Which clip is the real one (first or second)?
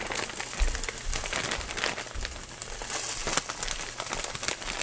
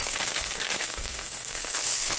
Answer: first